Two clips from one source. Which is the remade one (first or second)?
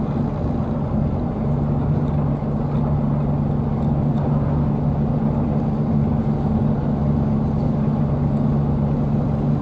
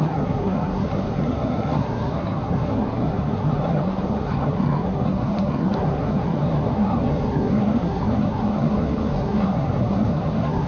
second